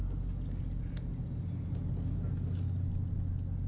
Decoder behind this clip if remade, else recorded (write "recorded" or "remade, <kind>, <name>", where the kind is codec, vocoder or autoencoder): recorded